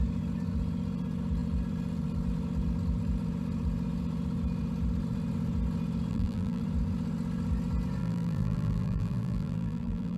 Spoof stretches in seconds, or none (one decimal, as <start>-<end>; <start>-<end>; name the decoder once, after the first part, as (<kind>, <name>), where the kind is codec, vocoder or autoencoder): 6.1-6.6 (vocoder, BigVGAN v2); 8.0-10.2